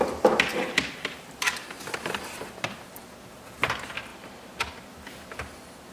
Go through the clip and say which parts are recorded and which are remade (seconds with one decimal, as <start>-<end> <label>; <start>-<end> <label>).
0.0-0.5 recorded; 0.5-2.9 remade; 2.9-5.9 recorded